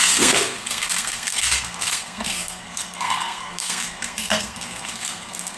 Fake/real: fake